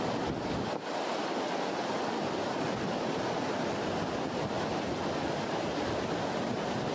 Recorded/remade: recorded